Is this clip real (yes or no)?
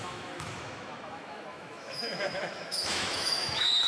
no